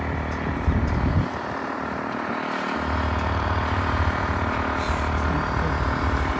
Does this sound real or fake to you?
real